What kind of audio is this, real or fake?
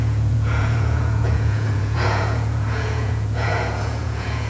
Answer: fake